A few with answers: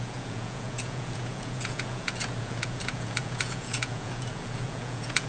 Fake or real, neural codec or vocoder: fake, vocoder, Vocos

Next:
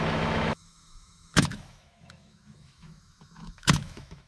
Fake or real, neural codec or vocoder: fake, autoencoder, DAC-VAE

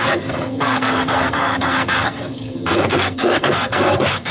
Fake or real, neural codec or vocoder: fake, codec, SNAC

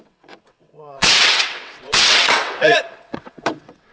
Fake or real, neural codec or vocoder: fake, vocoder, WaveNeXt